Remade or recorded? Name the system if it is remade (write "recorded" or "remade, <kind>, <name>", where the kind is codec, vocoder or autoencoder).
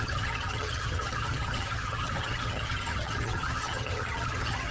remade, vocoder, HiFi-GAN